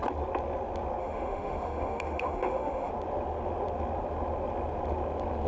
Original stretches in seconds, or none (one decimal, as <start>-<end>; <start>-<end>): 0.0-1.0; 2.9-5.5